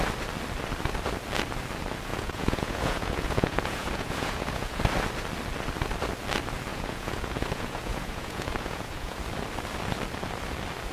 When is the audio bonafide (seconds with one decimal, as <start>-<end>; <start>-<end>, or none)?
0.0-2.1; 4.8-6.7; 9.2-10.9